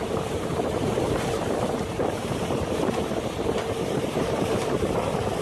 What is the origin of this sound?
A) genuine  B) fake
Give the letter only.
B